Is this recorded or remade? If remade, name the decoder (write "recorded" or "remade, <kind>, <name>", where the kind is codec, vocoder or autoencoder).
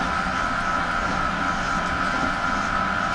recorded